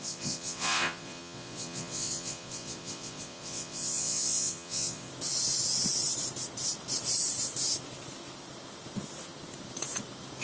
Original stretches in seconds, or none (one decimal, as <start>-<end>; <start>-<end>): 5.1-10.4